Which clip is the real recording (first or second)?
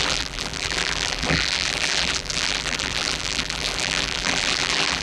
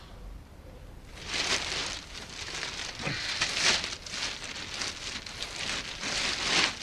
second